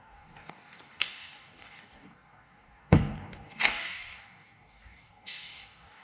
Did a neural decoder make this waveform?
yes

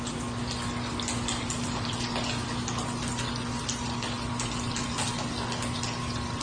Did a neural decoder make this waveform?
no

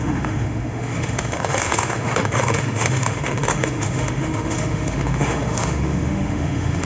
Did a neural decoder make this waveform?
yes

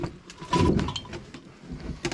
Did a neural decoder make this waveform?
no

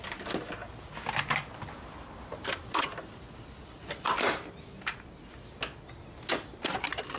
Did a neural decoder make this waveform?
no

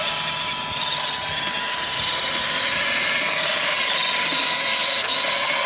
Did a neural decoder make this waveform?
no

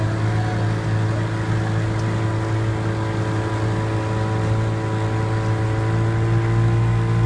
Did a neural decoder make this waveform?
no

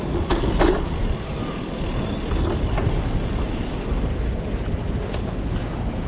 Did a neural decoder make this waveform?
no